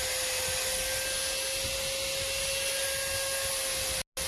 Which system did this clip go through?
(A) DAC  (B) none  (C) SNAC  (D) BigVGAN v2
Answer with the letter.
B